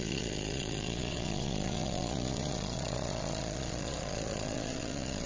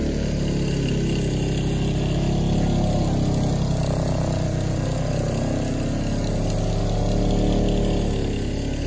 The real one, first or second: second